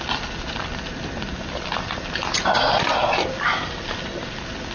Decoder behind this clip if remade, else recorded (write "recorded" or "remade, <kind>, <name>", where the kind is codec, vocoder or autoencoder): recorded